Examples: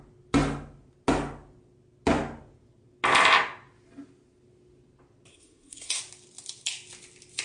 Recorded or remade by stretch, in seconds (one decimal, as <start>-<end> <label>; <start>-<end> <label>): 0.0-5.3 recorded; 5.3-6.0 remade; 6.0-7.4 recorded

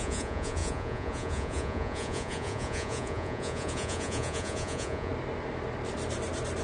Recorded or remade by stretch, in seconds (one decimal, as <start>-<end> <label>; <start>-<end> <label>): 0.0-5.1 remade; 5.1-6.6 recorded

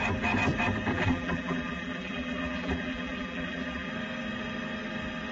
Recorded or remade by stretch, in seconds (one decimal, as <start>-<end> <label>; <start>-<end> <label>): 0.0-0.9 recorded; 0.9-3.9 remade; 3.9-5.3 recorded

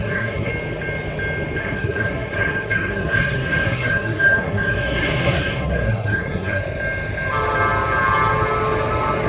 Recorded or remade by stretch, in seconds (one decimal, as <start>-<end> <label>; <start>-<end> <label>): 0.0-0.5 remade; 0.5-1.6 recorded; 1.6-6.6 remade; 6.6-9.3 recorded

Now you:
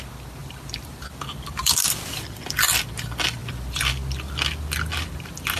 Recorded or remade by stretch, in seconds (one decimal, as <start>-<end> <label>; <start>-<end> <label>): 0.0-0.4 recorded; 0.4-1.1 remade; 1.1-1.6 recorded; 1.6-2.8 remade; 2.8-3.4 recorded; 3.4-3.9 remade; 3.9-5.6 recorded